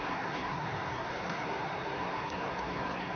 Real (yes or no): no